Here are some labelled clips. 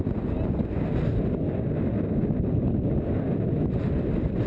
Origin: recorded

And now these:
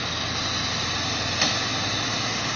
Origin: recorded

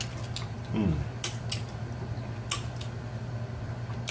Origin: recorded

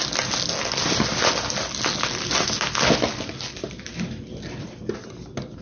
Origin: recorded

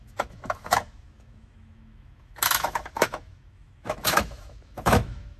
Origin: remade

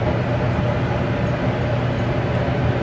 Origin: recorded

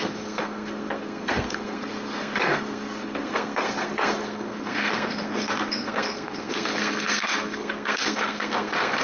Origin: remade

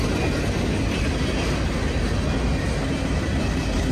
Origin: recorded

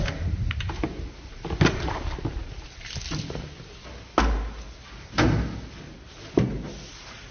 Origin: recorded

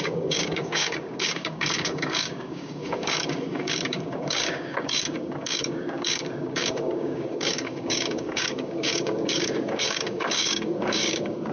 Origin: remade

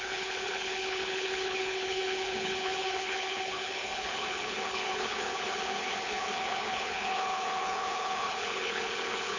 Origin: remade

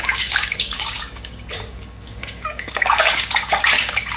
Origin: remade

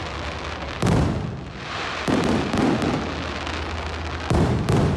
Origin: recorded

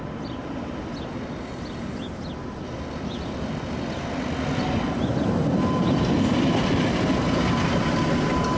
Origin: recorded